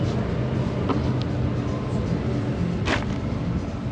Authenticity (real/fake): real